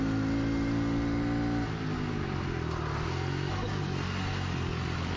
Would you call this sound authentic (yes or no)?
yes